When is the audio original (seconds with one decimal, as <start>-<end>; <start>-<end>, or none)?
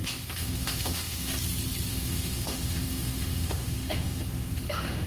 1.3-1.9